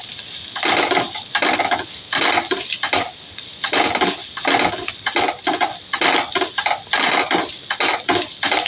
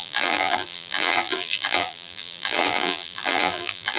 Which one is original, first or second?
first